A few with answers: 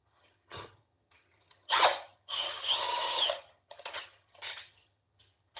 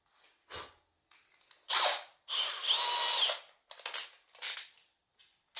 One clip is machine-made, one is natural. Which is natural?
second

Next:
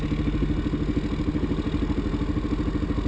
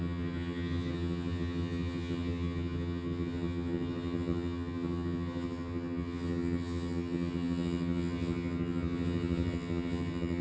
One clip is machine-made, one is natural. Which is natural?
first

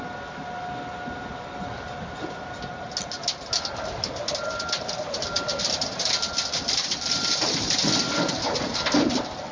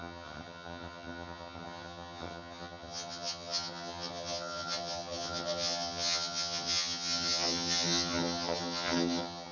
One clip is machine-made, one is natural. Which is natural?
first